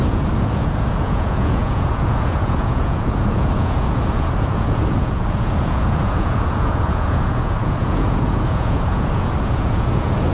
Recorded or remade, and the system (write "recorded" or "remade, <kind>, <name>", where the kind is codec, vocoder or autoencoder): remade, vocoder, Vocos